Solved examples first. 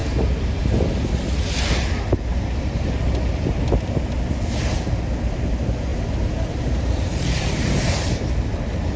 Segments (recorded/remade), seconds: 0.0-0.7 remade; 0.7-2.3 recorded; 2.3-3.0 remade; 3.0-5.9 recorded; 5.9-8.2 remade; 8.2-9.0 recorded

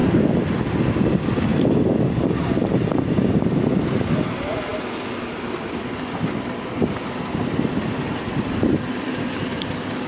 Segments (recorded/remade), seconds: 0.0-10.1 recorded